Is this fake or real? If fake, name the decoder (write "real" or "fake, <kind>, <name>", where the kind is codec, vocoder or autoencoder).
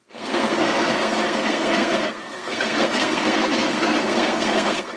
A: fake, codec, SNAC